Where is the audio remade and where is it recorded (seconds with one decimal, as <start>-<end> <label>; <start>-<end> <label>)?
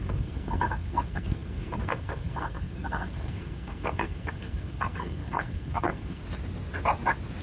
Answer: 0.0-6.2 remade; 6.2-7.4 recorded